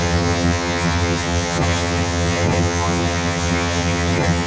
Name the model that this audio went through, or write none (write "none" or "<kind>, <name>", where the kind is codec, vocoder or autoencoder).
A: vocoder, HiFi-GAN